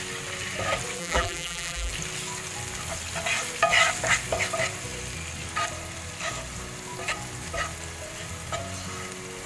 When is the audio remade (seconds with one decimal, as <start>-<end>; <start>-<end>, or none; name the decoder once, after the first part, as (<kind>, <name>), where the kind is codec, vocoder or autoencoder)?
1.0-1.9 (vocoder, BigVGAN v2)